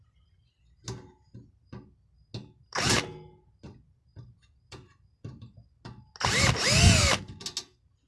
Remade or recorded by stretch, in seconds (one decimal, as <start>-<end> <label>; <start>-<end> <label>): 0.0-8.1 recorded